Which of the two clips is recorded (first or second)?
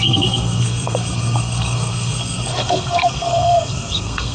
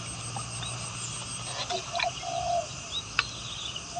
second